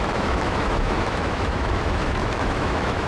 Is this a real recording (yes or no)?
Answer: no